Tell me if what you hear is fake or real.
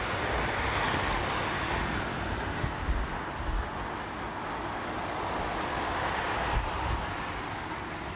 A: real